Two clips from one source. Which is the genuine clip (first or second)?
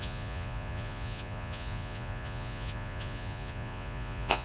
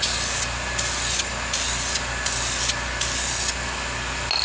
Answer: second